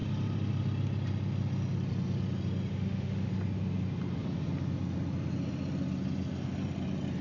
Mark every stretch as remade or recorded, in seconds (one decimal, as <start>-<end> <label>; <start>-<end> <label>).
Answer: 0.0-2.7 recorded; 2.7-3.3 remade; 3.3-7.2 recorded